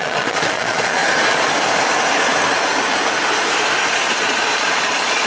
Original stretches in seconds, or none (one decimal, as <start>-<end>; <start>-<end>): 1.0-4.2